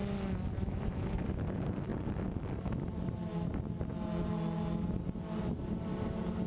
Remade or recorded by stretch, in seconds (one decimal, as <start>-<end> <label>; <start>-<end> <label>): 0.0-0.5 recorded; 0.5-1.9 remade; 1.9-5.4 recorded; 5.4-6.5 remade